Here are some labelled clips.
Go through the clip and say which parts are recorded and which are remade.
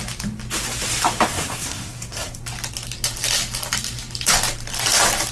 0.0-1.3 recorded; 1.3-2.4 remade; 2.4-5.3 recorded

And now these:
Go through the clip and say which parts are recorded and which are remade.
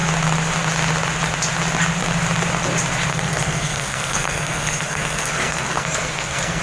0.0-3.1 recorded; 3.1-6.6 remade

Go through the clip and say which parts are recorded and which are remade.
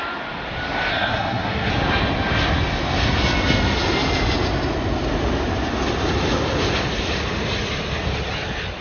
0.0-0.9 recorded; 0.9-1.7 remade; 1.7-8.8 recorded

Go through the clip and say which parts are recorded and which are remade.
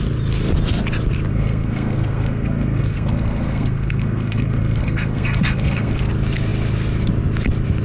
0.0-1.3 recorded; 1.3-6.0 remade; 6.0-7.8 recorded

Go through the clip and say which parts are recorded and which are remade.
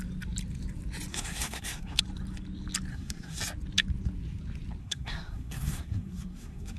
0.0-1.1 recorded; 1.1-2.0 remade; 2.0-2.9 recorded; 2.9-3.4 remade; 3.4-4.8 recorded; 4.8-6.8 remade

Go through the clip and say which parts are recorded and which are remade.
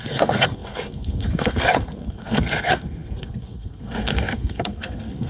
0.0-5.3 remade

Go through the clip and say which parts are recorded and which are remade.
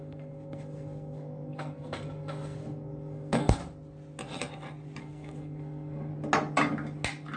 0.0-3.6 remade; 3.6-5.0 recorded; 5.0-6.1 remade; 6.1-7.4 recorded